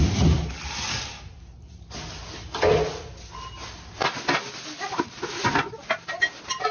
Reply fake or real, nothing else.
real